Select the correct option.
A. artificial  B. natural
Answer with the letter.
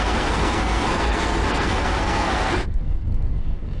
A